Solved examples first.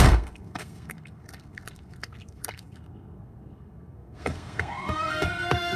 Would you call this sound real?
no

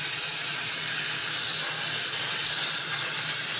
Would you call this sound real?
yes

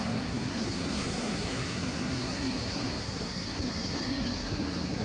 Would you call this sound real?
no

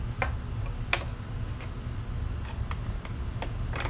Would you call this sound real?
yes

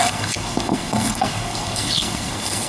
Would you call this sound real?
no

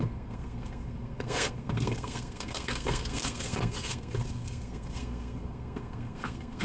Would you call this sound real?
no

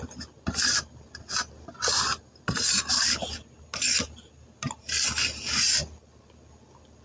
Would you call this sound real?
yes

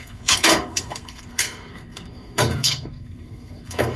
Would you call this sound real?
no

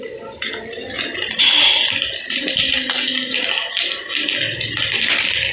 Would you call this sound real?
yes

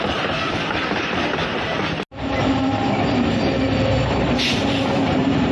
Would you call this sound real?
yes